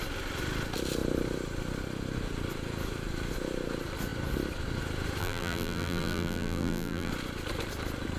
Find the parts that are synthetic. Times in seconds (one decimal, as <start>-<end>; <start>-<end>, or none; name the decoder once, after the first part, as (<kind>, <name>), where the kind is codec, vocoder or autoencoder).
5.2-7.1 (vocoder, BigVGAN v2)